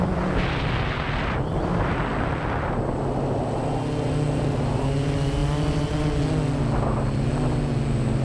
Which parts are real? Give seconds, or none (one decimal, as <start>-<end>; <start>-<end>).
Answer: 0.0-8.2